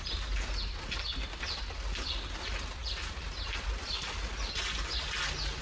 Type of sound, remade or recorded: recorded